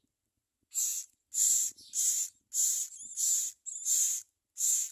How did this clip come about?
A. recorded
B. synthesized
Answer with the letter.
A